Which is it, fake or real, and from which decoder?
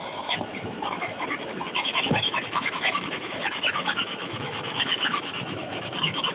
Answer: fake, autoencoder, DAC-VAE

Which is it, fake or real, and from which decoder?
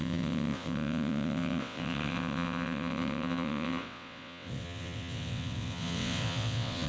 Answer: fake, vocoder, WaveNeXt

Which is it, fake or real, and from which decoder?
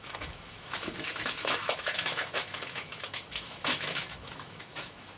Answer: fake, autoencoder, DAC-VAE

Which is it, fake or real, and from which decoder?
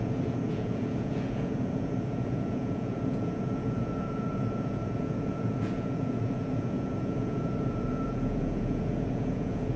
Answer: fake, vocoder, Vocos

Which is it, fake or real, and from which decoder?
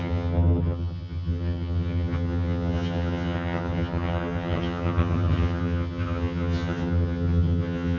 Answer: fake, vocoder, HiFi-GAN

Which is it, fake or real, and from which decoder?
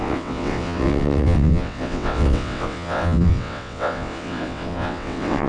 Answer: fake, vocoder, WaveNeXt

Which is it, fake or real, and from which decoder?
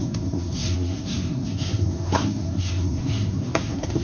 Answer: fake, codec, SNAC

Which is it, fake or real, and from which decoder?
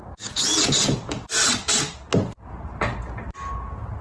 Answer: real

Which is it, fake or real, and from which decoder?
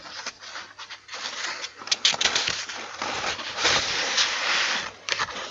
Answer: fake, vocoder, BigVGAN v2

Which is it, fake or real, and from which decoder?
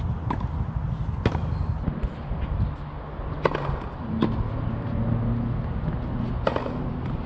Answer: real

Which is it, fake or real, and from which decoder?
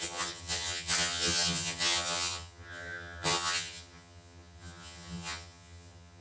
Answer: fake, vocoder, HiFi-GAN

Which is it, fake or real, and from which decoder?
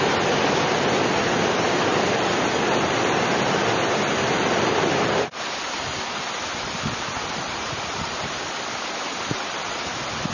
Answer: real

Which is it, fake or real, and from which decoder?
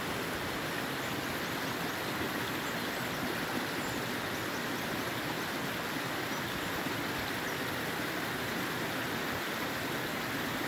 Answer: real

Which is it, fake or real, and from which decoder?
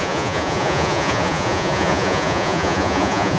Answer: fake, vocoder, Vocos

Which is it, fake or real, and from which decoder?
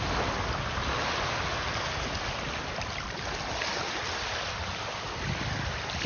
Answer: real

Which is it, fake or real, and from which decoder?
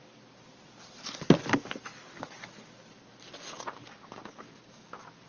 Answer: real